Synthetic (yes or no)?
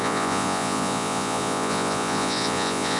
yes